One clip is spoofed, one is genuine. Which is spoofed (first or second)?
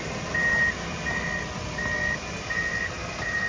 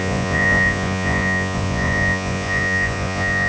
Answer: second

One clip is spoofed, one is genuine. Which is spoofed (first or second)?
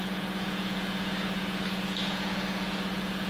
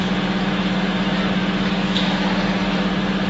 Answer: first